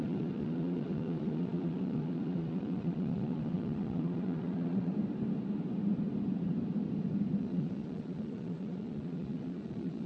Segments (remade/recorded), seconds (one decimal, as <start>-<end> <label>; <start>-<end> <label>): 0.0-4.9 remade; 4.9-7.4 recorded; 7.4-10.1 remade